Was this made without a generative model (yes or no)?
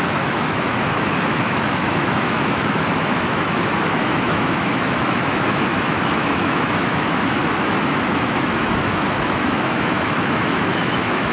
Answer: no